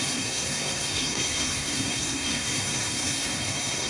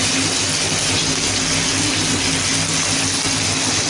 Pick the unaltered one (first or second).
second